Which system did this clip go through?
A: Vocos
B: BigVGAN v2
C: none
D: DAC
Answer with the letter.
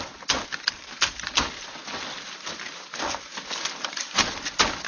C